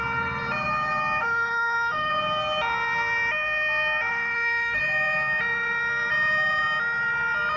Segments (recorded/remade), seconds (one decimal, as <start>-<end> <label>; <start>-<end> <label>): 0.0-1.2 recorded; 1.2-2.1 remade; 2.1-4.1 recorded; 4.1-4.8 remade; 4.8-7.6 recorded